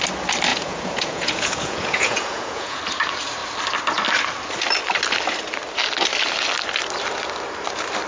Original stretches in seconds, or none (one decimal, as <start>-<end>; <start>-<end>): 0.0-0.5; 2.8-8.1